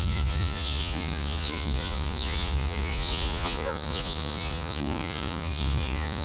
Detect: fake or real fake